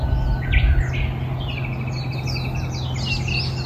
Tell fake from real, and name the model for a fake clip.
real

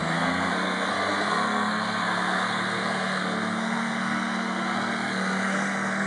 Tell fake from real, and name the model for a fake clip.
fake, codec, SNAC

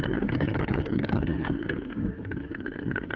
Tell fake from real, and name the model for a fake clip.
fake, codec, SNAC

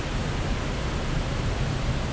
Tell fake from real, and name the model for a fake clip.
real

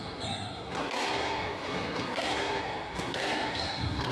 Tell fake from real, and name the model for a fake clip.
fake, codec, SNAC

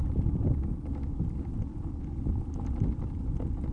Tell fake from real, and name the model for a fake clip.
real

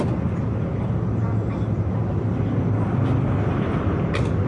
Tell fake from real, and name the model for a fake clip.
real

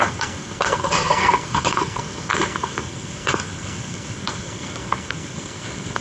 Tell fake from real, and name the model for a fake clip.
fake, codec, SNAC